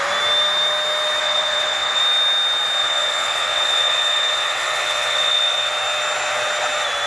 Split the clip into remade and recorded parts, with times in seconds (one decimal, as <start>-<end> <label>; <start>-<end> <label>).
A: 0.0-1.2 recorded; 1.2-2.0 remade; 2.0-2.8 recorded; 2.8-5.7 remade; 5.7-7.1 recorded